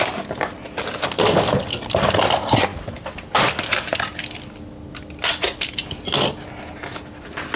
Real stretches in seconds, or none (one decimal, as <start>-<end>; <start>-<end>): 0.0-7.6